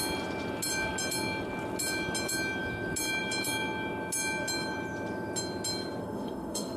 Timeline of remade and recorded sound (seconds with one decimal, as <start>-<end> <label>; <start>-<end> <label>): 0.0-6.0 recorded; 6.0-6.8 remade